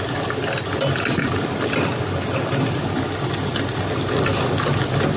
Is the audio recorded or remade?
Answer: recorded